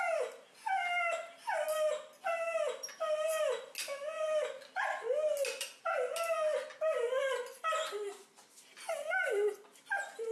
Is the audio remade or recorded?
recorded